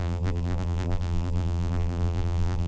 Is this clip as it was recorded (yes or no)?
no